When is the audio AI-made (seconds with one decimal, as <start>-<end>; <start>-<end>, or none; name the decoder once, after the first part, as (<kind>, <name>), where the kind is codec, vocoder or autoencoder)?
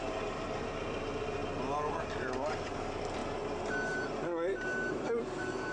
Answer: 0.0-1.4 (vocoder, BigVGAN v2); 1.9-3.2; 5.0-5.7